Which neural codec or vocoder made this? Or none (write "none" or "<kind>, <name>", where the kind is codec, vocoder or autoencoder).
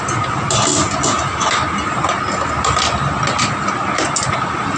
none